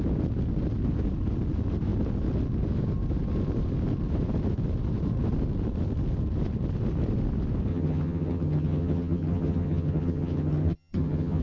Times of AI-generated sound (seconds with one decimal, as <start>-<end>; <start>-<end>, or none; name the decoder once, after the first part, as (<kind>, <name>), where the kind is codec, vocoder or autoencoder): 7.7-11.4 (vocoder, HiFi-GAN)